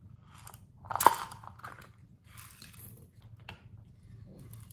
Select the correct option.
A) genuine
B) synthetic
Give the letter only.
A